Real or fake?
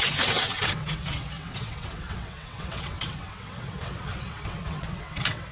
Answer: fake